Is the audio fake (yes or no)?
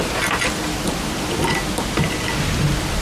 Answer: no